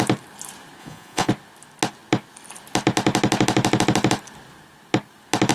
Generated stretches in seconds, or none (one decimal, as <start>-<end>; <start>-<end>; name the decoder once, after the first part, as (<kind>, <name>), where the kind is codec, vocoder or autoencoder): 0.8-1.3 (vocoder, Vocos)